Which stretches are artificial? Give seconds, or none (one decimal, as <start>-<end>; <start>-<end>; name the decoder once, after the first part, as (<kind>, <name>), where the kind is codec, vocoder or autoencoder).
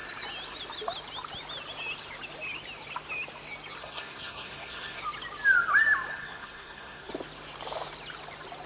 3.8-5.0 (codec, SNAC); 6.1-7.1